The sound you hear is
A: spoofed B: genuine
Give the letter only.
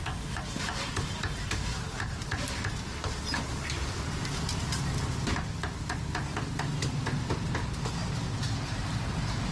B